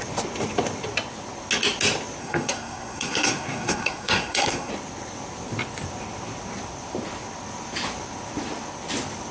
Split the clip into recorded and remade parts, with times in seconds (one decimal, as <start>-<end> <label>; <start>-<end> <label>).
0.0-2.2 recorded; 2.2-4.7 remade; 4.7-9.3 recorded